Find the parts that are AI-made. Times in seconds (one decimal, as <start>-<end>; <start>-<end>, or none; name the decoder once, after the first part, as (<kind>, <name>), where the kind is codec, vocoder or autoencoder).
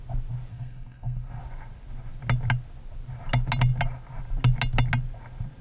0.5-1.4 (codec, SNAC)